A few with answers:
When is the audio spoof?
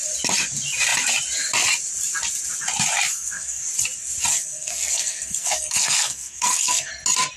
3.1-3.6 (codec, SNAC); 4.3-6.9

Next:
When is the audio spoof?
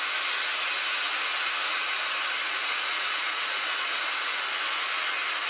2.4-4.4 (vocoder, Vocos)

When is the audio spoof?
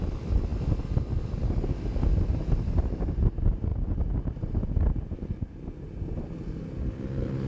none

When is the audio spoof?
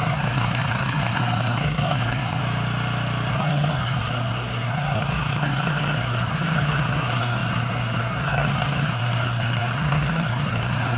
0.0-2.4 (codec, SNAC); 3.3-11.0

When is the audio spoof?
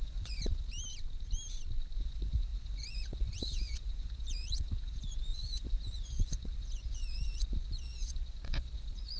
0.0-0.7 (vocoder, Vocos); 2.0-9.2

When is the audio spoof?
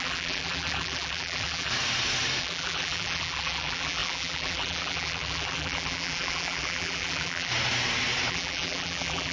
0.0-1.7 (vocoder, BigVGAN v2); 2.4-7.5; 8.3-9.3